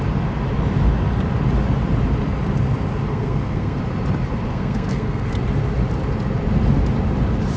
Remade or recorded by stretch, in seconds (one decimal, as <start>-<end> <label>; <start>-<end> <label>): 0.0-3.1 recorded; 3.1-3.8 remade; 3.8-4.5 recorded; 4.5-5.3 remade; 5.3-7.6 recorded